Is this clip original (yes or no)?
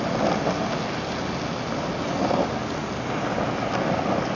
yes